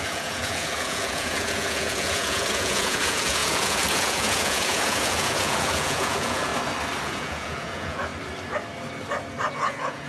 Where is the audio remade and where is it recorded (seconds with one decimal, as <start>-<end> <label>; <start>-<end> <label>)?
0.0-6.5 remade; 6.5-7.0 recorded; 7.0-8.1 remade; 8.1-9.5 recorded; 9.5-10.1 remade